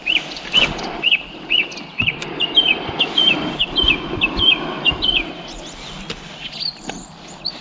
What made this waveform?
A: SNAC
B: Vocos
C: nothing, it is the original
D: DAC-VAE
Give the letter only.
C